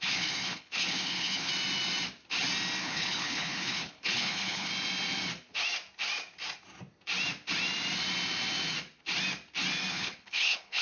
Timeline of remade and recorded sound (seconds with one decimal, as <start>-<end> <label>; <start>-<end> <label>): 0.0-1.5 remade; 1.5-2.8 recorded; 2.8-4.7 remade; 4.7-9.9 recorded; 9.9-10.8 remade